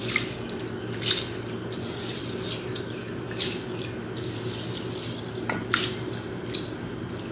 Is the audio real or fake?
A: real